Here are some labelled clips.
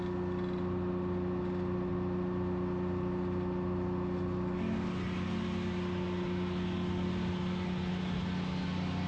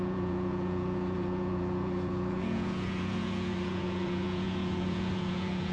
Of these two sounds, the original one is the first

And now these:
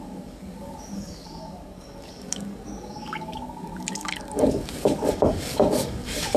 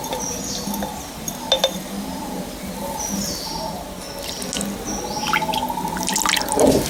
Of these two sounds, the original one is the second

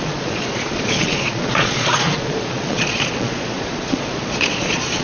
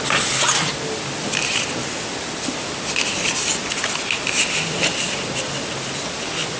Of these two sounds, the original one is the second